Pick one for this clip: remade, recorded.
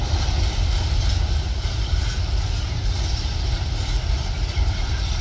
recorded